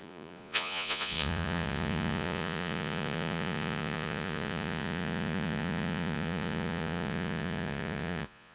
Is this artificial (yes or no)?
yes